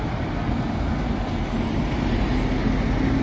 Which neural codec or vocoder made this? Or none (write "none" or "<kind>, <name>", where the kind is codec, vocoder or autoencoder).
none